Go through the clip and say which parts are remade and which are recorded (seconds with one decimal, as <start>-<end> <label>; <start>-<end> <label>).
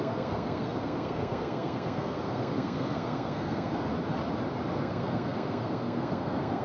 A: 0.0-3.9 remade; 3.9-4.8 recorded; 4.8-6.6 remade